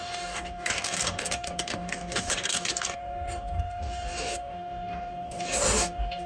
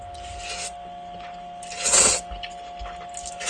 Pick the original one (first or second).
second